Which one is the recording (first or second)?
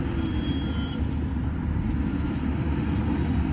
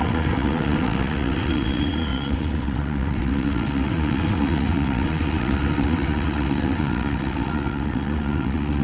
first